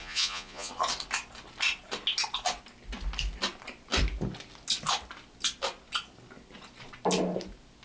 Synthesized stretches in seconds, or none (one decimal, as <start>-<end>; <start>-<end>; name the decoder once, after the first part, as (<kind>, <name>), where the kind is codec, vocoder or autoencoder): 0.0-0.7 (vocoder, Vocos)